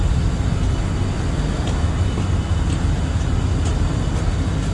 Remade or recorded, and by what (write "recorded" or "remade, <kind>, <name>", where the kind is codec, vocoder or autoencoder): recorded